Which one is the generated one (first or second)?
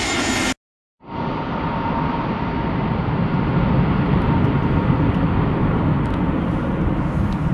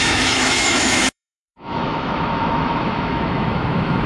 second